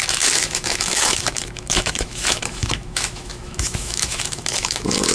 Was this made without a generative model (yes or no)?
no